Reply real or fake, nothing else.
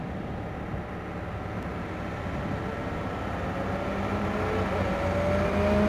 real